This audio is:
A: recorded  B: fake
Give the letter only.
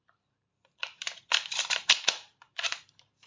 B